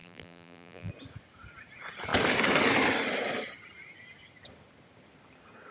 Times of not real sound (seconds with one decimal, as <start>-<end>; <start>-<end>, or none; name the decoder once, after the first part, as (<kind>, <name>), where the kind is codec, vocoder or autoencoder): 0.0-0.9 (vocoder, BigVGAN v2)